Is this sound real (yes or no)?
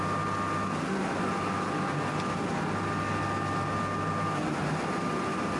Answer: yes